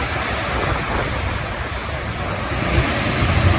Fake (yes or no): no